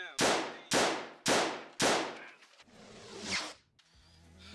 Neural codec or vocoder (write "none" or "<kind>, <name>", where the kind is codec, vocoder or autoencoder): none